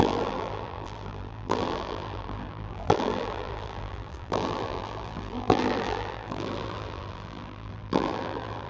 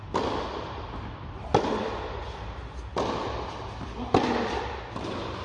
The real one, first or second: second